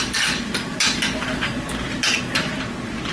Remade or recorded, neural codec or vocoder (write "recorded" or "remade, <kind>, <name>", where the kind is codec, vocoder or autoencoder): recorded